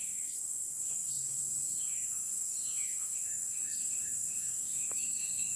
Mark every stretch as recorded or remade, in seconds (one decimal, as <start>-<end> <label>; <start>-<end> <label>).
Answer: 0.0-5.6 remade